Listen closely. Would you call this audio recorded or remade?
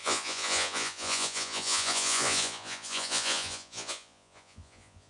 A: remade